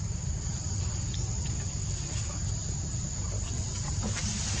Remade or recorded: recorded